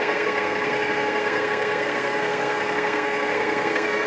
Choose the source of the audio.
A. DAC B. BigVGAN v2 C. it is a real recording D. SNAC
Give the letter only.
D